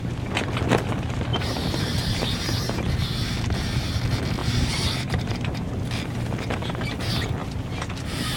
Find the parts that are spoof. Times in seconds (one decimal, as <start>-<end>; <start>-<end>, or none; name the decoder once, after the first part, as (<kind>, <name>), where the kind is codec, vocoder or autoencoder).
1.3-2.1 (vocoder, BigVGAN v2); 4.4-5.5